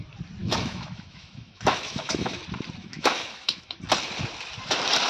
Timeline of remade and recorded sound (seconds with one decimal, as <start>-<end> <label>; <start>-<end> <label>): 0.0-0.4 recorded; 0.4-2.4 remade; 2.4-2.8 recorded; 2.8-3.8 remade; 3.8-5.1 recorded